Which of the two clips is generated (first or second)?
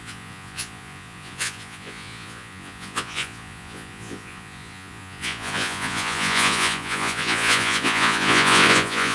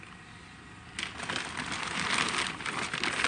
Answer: first